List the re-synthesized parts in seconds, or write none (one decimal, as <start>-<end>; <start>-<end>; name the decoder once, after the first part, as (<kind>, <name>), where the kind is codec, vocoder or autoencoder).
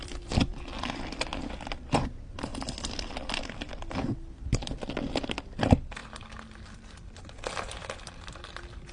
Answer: 0.0-1.4 (vocoder, BigVGAN v2); 2.5-3.4; 6.0-8.1